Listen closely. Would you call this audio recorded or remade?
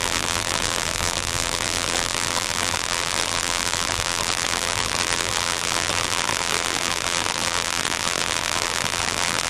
remade